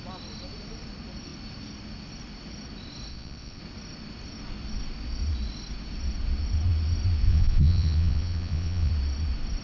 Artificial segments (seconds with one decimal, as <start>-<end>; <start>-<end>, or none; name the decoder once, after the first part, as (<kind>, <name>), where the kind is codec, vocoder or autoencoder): 3.1-3.6 (vocoder, Vocos); 7.3-8.9